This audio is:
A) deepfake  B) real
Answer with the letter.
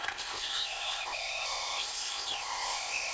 A